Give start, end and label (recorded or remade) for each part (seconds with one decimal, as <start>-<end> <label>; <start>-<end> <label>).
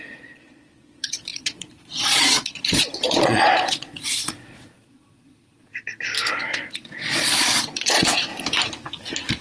0.0-5.7 remade; 5.7-6.3 recorded; 6.3-8.3 remade; 8.3-9.4 recorded